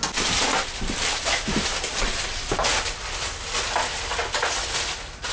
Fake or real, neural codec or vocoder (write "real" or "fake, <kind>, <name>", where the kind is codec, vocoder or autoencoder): real